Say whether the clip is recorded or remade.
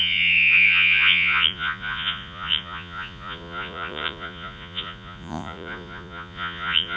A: remade